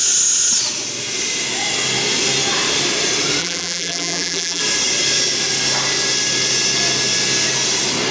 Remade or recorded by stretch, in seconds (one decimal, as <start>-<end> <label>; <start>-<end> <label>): 0.0-3.4 recorded; 3.4-4.6 remade; 4.6-8.1 recorded